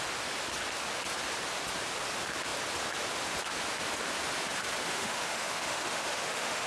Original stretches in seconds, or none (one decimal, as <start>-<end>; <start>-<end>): 0.0-4.8